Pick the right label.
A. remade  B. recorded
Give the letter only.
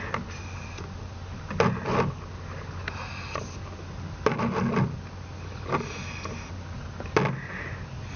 B